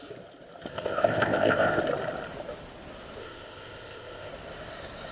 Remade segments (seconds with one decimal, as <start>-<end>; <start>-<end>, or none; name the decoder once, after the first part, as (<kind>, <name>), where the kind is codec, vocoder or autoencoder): 0.7-1.8 (codec, ZipCodec); 3.2-4.3